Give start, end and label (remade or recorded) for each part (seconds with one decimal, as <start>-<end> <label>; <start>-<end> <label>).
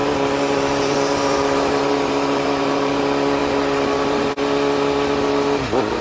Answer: 0.0-3.0 remade; 3.0-3.4 recorded; 3.4-4.3 remade; 4.3-6.0 recorded